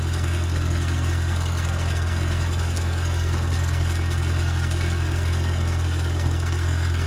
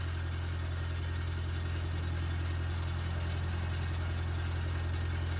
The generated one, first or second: first